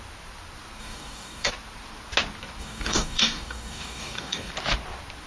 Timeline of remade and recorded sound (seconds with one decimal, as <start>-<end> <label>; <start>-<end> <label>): 0.0-0.8 recorded; 0.8-1.5 remade; 1.5-2.6 recorded; 2.6-4.5 remade; 4.5-5.3 recorded